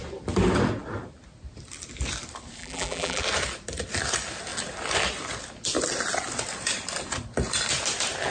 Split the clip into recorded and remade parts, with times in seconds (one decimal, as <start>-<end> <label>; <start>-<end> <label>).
0.0-2.6 recorded; 2.6-3.2 remade; 3.2-8.3 recorded